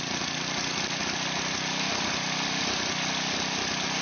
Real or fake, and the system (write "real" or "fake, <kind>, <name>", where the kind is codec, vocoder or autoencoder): real